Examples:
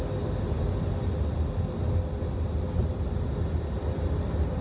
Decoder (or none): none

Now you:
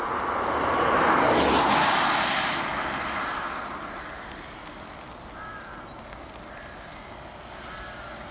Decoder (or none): none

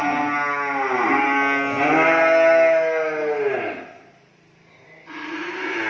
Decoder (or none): none